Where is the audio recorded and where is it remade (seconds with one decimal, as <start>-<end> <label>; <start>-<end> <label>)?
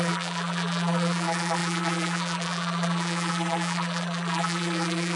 0.0-5.2 remade